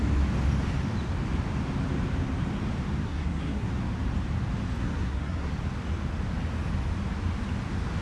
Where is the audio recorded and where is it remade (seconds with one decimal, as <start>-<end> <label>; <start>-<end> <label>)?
0.0-3.0 recorded; 3.0-3.7 remade; 3.7-4.8 recorded; 4.8-5.5 remade; 5.5-8.0 recorded